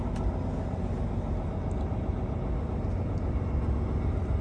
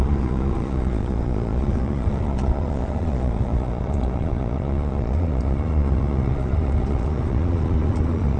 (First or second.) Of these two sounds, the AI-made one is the second